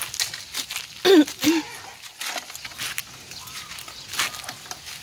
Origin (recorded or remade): recorded